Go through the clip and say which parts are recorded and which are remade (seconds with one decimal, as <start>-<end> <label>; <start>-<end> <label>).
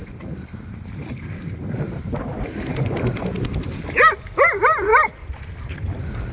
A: 0.0-3.7 remade; 3.7-6.3 recorded